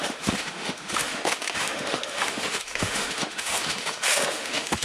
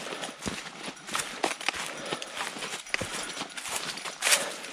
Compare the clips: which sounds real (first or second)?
second